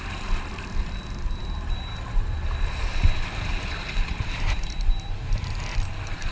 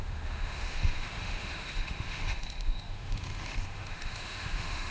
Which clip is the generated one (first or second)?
second